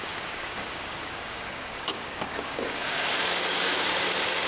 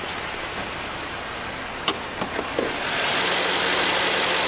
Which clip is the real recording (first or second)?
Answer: second